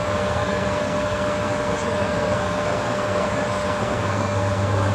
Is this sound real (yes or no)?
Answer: no